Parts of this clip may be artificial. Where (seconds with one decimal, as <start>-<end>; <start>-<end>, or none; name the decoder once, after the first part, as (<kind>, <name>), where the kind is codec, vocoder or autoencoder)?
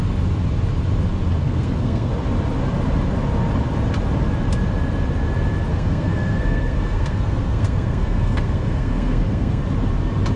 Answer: 1.4-2.1 (codec, SNAC); 5.7-9.6